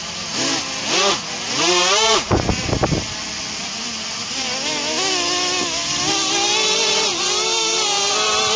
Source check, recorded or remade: recorded